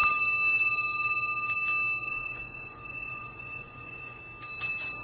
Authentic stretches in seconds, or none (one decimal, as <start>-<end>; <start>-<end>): 0.0-2.0; 4.2-5.0